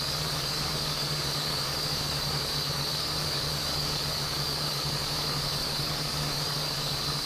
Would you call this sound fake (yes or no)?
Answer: yes